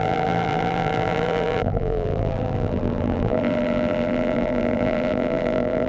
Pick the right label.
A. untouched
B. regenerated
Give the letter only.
B